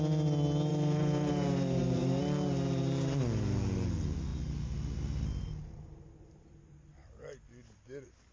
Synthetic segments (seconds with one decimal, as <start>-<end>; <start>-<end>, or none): 0.7-2.2